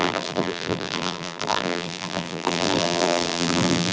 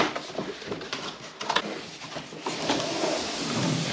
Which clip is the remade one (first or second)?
first